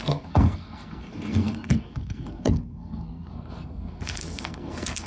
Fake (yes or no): yes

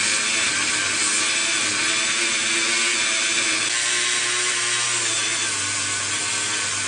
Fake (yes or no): no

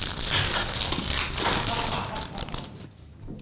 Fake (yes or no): no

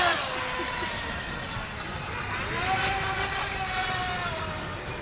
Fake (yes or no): no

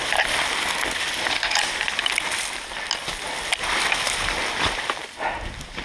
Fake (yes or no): no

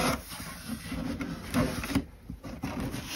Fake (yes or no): no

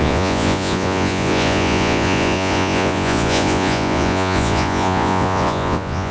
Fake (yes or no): yes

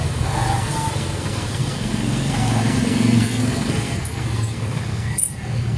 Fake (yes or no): yes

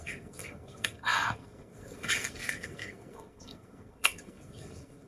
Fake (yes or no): yes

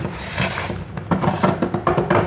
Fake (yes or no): no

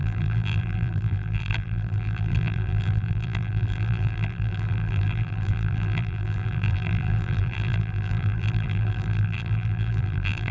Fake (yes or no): yes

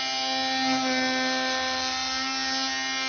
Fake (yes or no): no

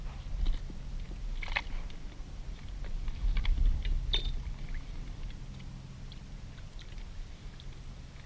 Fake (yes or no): no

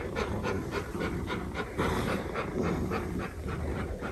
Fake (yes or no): yes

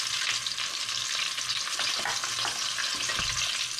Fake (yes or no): no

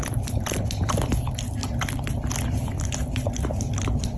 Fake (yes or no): no